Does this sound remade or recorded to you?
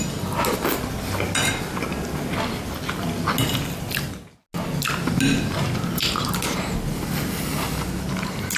recorded